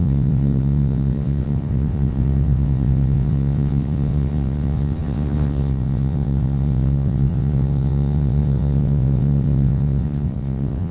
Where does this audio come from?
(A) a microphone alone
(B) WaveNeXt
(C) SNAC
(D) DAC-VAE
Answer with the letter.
B